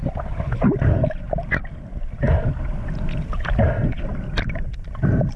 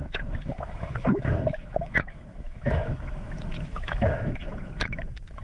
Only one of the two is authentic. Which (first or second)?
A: first